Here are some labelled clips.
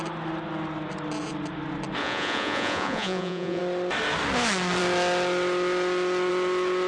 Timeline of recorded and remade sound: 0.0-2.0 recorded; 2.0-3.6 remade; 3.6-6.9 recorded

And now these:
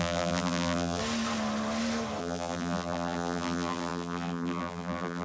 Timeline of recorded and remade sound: 0.0-1.0 remade; 1.0-2.2 recorded; 2.2-5.2 remade